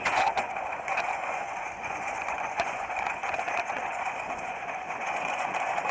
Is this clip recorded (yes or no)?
no